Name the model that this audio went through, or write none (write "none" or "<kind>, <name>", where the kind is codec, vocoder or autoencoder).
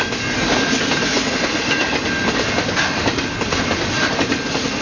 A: none